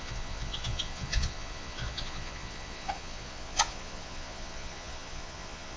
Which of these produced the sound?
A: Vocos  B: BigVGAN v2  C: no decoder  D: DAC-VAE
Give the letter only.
A